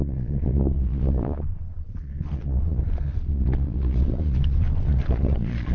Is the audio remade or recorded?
remade